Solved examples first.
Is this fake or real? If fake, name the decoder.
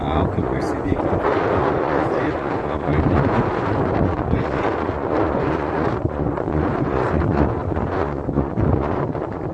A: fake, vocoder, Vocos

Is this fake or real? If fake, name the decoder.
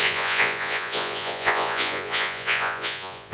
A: fake, vocoder, Vocos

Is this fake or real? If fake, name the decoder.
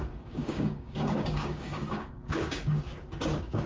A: fake, codec, DAC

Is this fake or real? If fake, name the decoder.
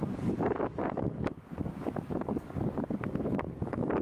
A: fake, codec, DAC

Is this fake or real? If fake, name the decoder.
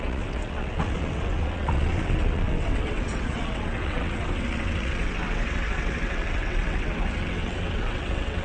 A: fake, vocoder, WaveNeXt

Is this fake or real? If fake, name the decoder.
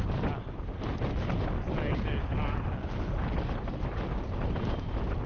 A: real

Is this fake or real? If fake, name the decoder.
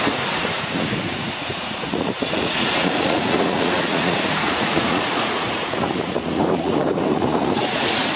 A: fake, vocoder, Vocos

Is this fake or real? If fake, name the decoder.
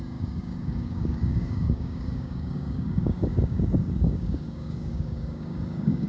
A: fake, codec, DAC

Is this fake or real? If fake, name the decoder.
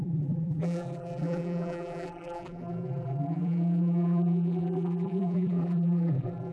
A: fake, vocoder, BigVGAN v2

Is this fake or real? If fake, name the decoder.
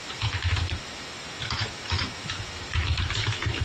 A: fake, autoencoder, DAC-VAE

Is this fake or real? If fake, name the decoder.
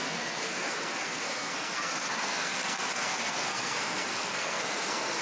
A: fake, codec, SNAC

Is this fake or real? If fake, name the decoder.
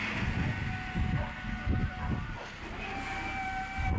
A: real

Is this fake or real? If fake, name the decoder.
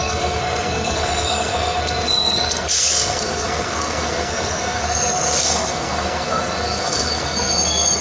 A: fake, codec, SNAC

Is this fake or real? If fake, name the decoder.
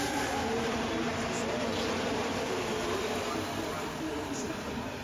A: fake, vocoder, BigVGAN v2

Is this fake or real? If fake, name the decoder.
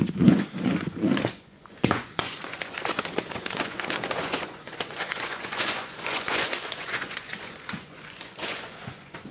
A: fake, vocoder, Vocos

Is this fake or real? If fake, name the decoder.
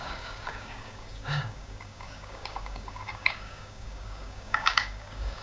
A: fake, codec, DAC